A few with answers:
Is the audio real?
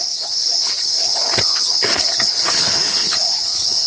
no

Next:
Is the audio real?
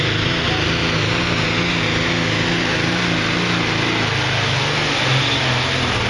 yes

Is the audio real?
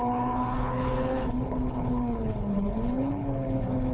no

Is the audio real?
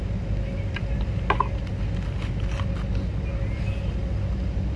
yes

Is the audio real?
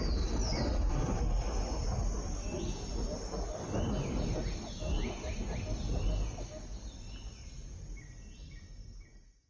yes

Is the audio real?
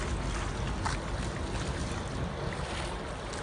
yes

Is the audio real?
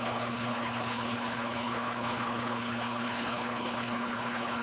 no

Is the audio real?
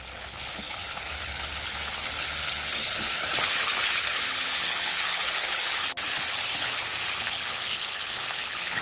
no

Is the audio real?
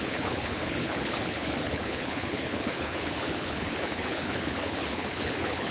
no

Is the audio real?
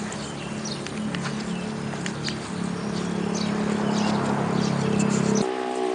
yes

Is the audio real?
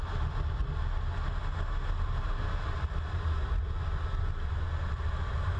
yes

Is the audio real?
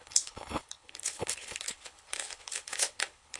no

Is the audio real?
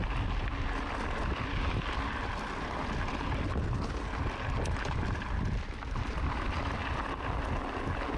yes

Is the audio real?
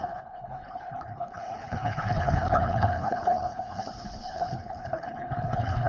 no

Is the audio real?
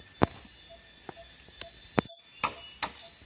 yes